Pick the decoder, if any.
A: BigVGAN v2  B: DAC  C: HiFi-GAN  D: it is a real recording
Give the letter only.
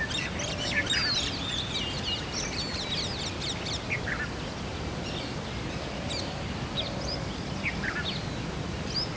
D